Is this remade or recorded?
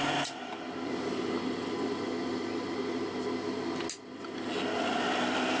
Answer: recorded